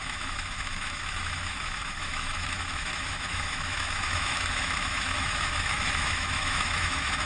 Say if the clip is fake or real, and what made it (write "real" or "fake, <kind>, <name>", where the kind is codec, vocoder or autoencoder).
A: fake, autoencoder, DAC-VAE